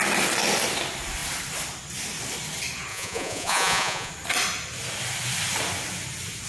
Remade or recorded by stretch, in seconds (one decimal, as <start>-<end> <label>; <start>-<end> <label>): 0.0-2.9 recorded; 2.9-4.1 remade; 4.1-6.5 recorded